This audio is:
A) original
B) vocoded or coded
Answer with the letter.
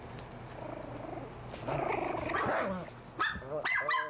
A